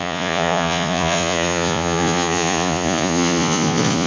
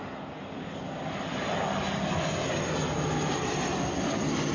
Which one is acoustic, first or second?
second